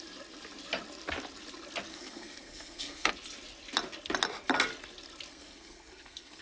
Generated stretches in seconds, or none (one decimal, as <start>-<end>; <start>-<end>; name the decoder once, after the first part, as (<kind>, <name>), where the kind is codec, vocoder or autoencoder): 1.9-3.1 (codec, SNAC); 5.3-6.4